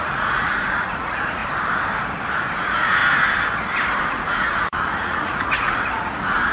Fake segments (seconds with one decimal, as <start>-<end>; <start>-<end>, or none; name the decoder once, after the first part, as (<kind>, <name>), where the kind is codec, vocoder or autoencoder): 0.0-1.4 (vocoder, Vocos); 2.6-3.0; 4.0-6.5